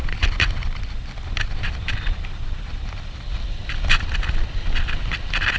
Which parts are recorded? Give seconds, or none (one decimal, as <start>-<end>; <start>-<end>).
0.0-5.6